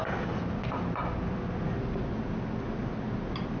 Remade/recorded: recorded